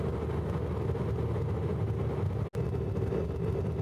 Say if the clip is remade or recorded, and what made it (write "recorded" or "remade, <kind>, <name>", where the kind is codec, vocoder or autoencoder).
recorded